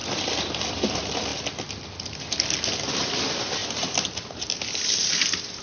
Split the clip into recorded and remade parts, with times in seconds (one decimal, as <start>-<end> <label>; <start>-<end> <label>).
0.0-5.6 recorded

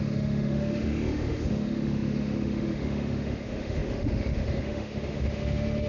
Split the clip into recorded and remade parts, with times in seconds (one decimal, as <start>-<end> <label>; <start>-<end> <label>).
0.0-5.9 remade

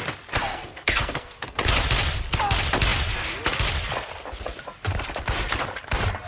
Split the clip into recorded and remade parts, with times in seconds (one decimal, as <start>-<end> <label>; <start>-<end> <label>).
0.0-0.5 recorded; 0.5-1.6 remade; 1.6-6.3 recorded

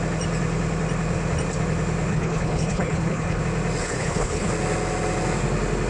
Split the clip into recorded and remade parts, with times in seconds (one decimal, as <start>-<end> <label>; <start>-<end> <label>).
0.0-2.1 recorded; 2.1-3.4 remade; 3.4-3.8 recorded; 3.8-4.5 remade; 4.5-5.9 recorded